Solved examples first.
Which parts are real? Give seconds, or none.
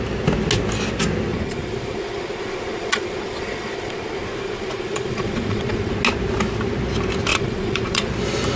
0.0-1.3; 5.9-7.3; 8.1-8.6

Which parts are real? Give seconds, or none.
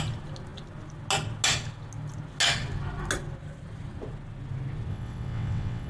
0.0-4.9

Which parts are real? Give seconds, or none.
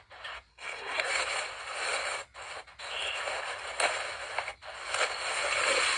0.0-0.5; 1.1-6.0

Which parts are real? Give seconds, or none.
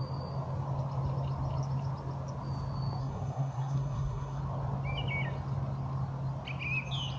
0.0-3.0; 4.4-7.2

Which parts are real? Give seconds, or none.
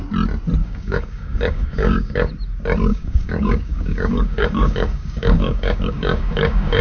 0.0-0.6; 2.3-2.9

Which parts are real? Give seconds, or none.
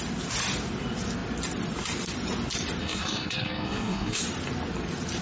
0.0-2.8; 4.2-5.2